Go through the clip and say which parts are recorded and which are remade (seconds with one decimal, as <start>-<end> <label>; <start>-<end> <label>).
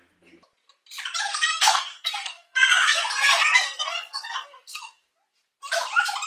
0.0-1.3 recorded; 1.3-5.1 remade; 5.1-6.3 recorded